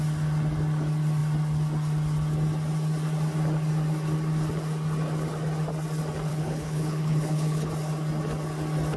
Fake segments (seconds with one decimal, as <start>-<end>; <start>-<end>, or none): 6.3-7.7